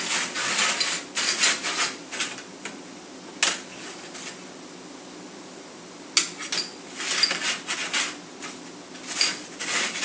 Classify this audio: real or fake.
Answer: real